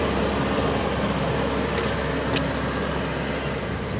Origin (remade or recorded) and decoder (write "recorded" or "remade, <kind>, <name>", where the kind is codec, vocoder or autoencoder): recorded